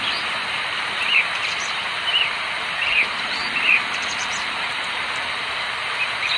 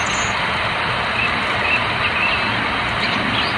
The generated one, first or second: first